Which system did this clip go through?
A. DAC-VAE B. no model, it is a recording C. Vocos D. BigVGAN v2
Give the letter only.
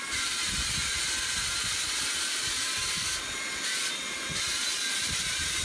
D